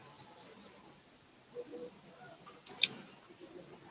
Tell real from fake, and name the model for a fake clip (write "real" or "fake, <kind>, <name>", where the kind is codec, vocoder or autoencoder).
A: real